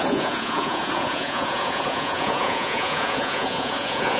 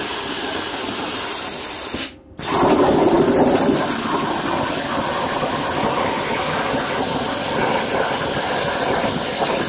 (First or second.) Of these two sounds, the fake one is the first